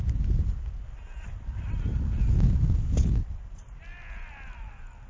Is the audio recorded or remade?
recorded